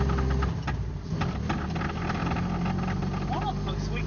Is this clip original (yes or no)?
yes